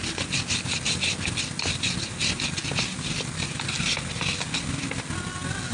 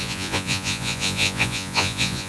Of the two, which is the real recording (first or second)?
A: first